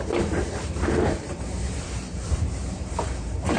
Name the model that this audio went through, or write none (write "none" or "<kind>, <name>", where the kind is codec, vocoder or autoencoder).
vocoder, BigVGAN v2